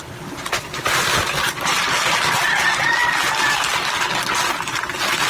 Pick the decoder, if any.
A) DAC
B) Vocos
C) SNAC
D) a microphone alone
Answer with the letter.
D